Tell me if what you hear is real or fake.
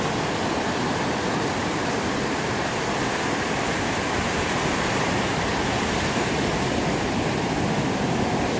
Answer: real